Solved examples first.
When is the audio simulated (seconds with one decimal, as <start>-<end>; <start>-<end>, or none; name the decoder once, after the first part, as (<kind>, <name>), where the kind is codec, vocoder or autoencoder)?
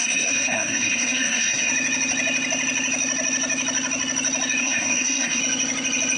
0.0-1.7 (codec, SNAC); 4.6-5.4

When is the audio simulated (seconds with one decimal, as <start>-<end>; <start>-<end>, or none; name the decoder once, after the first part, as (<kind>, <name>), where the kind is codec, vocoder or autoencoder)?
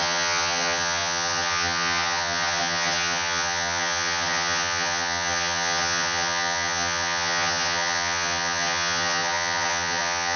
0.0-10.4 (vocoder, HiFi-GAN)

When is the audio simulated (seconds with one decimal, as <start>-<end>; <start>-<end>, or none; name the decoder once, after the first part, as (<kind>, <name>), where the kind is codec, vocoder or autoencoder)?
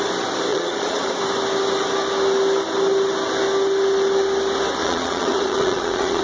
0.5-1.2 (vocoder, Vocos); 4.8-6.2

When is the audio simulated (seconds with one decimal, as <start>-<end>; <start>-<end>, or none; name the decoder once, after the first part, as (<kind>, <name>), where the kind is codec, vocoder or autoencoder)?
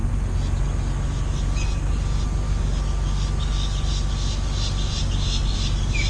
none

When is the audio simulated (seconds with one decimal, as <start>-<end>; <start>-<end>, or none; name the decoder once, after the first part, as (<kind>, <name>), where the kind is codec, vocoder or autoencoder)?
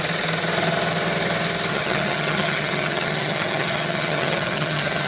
1.7-5.1 (vocoder, HiFi-GAN)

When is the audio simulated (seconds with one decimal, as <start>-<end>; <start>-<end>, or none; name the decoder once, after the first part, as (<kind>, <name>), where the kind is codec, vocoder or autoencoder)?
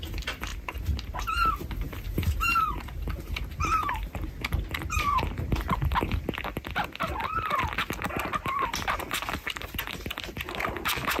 0.5-5.0 (vocoder, BigVGAN v2)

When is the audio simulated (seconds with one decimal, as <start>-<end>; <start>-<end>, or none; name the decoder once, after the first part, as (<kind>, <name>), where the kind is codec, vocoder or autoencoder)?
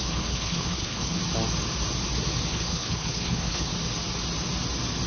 0.0-1.2 (codec, HILCodec); 2.5-3.7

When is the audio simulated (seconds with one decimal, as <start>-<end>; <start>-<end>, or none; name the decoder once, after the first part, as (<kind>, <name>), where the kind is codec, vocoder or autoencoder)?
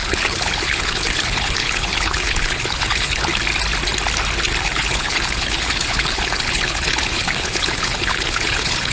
0.0-3.3 (codec, HILCodec); 4.6-8.9